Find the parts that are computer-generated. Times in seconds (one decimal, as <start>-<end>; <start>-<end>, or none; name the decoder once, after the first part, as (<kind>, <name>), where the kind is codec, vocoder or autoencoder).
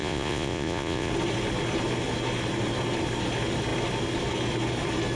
0.0-1.1 (vocoder, Vocos)